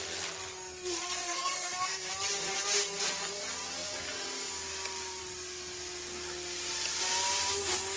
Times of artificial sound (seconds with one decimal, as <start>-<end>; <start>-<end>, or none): 1.2-2.1